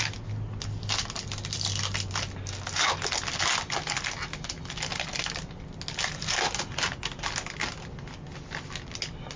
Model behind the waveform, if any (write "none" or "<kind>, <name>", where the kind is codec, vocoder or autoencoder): none